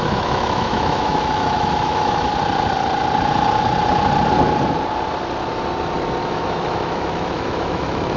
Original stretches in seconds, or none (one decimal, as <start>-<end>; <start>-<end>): 2.3-6.2